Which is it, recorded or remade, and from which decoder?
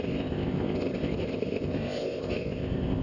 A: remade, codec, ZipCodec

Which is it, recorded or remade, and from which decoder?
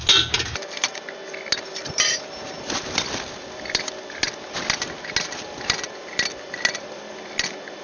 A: recorded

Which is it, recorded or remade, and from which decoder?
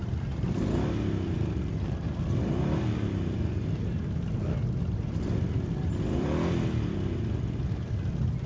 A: recorded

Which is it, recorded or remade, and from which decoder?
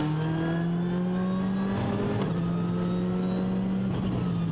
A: recorded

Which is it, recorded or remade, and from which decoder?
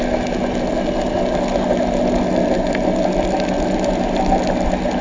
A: recorded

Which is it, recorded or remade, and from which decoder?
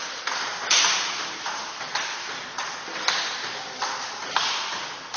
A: recorded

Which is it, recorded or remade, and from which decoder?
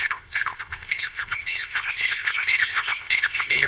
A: remade, codec, ZipCodec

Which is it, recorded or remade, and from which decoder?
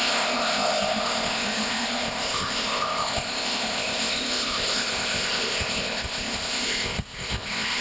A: remade, codec, ZipCodec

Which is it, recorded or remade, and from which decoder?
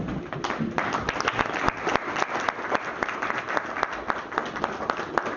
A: recorded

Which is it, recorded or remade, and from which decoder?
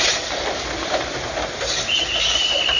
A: recorded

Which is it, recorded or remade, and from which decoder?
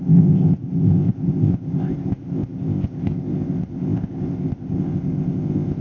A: remade, codec, ZipCodec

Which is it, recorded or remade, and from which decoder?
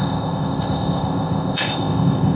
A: remade, codec, ZipCodec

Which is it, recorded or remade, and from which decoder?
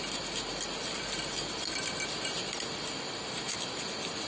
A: recorded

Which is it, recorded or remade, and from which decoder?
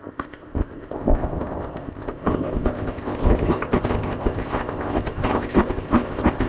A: remade, codec, ZipCodec